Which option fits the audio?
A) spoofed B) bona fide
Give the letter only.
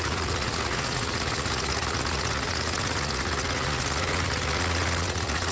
A